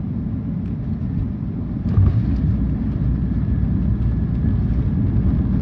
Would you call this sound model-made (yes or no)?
no